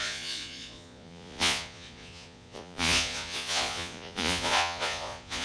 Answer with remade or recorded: remade